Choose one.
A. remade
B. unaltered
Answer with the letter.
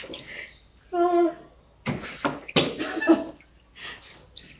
B